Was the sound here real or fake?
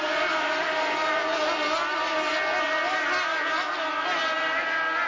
real